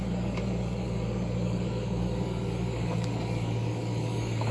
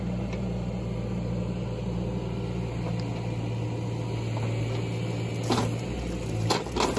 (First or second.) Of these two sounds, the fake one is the first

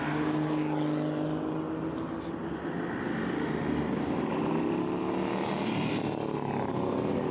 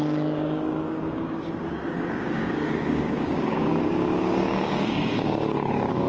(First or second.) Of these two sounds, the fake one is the second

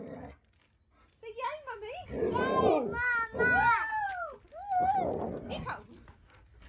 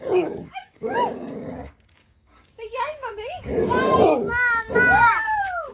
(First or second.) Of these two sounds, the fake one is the second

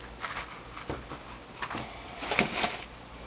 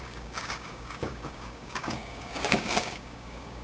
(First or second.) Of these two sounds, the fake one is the second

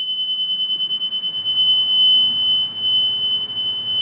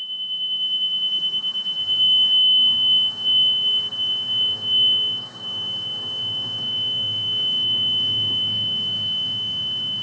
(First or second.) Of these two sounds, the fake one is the second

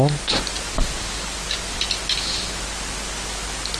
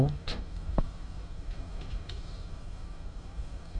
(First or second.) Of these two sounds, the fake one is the second